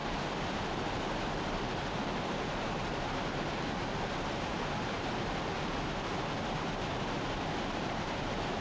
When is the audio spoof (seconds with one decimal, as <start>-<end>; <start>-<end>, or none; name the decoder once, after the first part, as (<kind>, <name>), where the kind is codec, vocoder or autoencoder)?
1.4-4.5 (vocoder, BigVGAN v2); 7.6-8.6